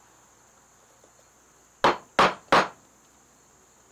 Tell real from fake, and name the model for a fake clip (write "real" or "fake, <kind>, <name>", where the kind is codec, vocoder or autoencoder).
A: real